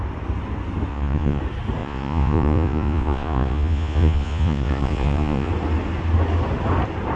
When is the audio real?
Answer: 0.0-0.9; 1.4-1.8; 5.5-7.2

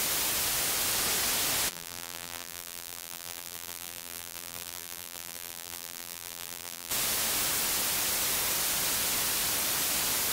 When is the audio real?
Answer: 0.0-1.7; 6.9-10.3

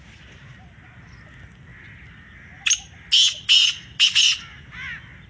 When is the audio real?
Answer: 0.0-5.3

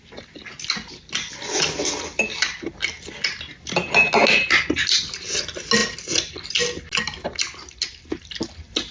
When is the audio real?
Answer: 0.0-8.9

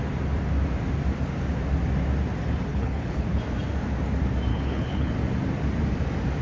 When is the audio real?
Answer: 0.0-2.7; 3.4-4.5; 5.1-6.4

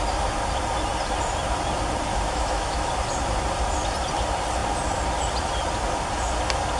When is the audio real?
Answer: 0.0-2.1; 2.9-6.8

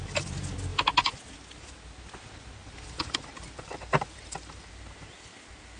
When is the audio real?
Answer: 0.0-2.6; 4.7-5.8

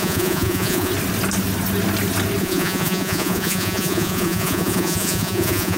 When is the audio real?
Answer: 0.9-2.4